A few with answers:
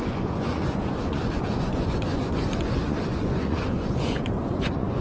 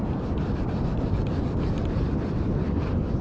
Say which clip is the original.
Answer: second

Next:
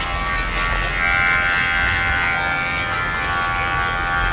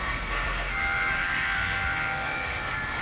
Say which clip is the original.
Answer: first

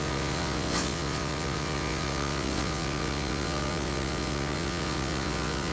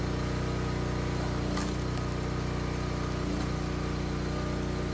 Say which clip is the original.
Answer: second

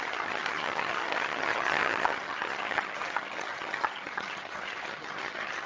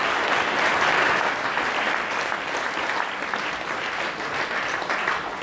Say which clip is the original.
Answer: second